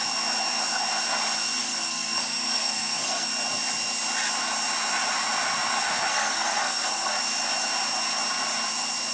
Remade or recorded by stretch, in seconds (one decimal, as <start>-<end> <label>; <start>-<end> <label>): 0.0-1.6 recorded; 1.6-3.3 remade; 3.3-6.1 recorded; 6.1-7.1 remade; 7.1-9.1 recorded